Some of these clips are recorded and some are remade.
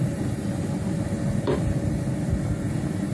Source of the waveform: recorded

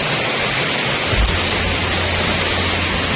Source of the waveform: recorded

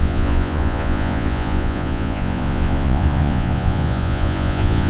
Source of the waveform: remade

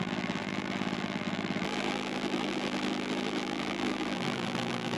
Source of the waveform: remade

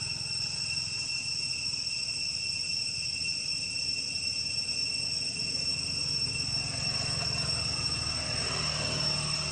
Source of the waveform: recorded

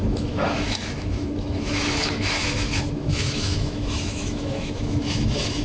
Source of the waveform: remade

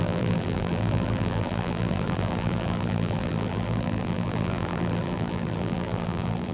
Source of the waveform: remade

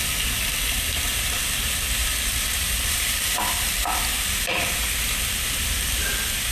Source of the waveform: recorded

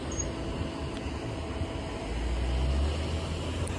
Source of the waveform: recorded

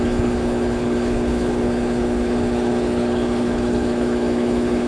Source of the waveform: remade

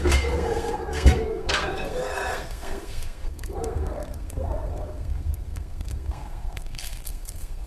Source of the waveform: remade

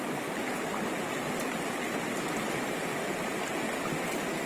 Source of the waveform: recorded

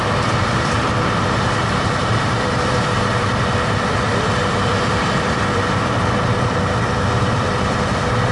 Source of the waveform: remade